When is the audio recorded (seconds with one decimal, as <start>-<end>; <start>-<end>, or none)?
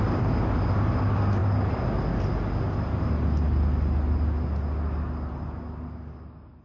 0.0-6.6